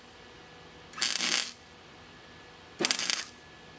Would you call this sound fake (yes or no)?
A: no